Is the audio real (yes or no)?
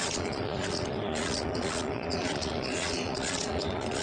no